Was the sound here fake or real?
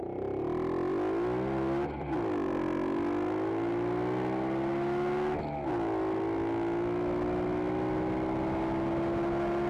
real